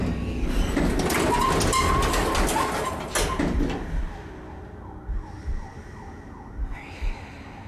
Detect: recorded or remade recorded